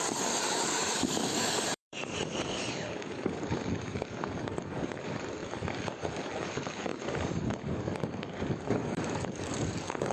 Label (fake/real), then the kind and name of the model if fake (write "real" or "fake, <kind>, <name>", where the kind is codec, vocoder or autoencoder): fake, codec, DAC